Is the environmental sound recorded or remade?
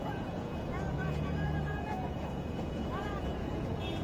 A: remade